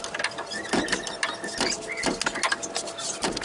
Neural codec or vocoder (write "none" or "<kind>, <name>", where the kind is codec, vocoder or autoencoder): none